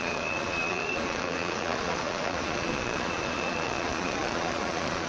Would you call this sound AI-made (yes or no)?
yes